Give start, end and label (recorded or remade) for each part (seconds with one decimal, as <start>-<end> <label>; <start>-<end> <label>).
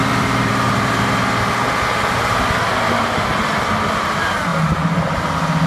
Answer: 0.0-0.9 remade; 0.9-4.5 recorded; 4.5-5.3 remade; 5.3-5.7 recorded